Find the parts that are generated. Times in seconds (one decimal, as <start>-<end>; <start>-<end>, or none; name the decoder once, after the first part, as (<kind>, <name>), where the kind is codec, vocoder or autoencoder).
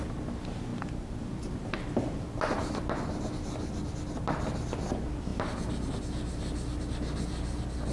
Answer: 0.7-2.7 (vocoder, BigVGAN v2)